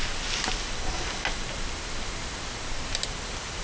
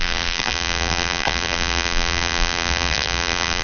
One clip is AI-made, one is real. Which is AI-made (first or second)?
second